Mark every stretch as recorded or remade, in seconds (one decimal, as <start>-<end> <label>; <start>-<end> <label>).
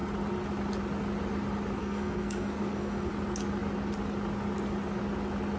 0.0-1.8 recorded; 1.8-3.1 remade; 3.1-5.6 recorded